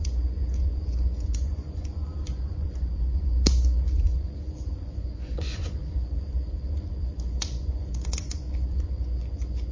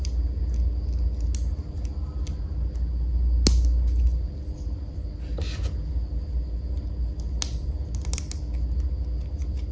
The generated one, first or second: first